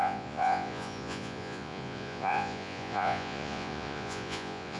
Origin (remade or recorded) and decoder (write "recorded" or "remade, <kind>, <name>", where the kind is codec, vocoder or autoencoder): remade, vocoder, Vocos